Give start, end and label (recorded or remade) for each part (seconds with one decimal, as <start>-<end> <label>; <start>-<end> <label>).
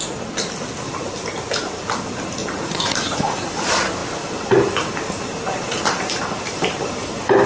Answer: 0.0-2.4 recorded; 2.4-3.5 remade; 3.5-7.5 recorded